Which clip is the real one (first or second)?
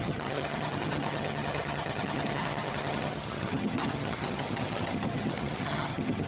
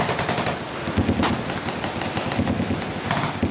second